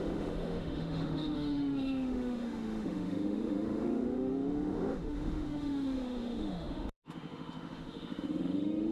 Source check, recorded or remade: remade